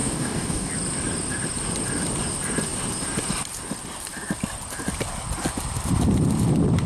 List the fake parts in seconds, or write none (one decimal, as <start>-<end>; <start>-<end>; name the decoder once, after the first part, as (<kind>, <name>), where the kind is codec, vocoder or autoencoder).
0.0-0.7 (codec, DAC)